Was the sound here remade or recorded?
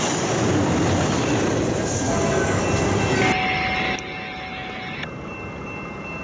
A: recorded